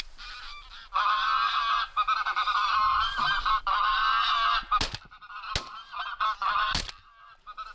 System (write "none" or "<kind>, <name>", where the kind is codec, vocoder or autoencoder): none